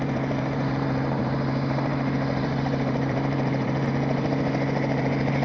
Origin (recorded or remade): remade